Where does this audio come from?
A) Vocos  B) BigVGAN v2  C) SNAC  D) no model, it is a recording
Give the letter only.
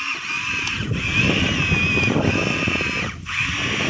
D